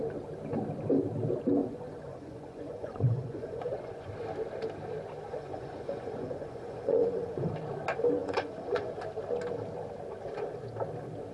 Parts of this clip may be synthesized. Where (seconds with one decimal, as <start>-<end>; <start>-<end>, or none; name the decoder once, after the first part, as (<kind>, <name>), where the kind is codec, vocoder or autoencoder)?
1.6-4.1 (vocoder, Vocos); 5.3-7.5; 8.2-8.9